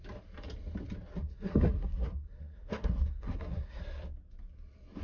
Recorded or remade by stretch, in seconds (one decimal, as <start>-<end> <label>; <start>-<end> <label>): 0.0-1.2 recorded; 1.2-3.8 remade; 3.8-5.0 recorded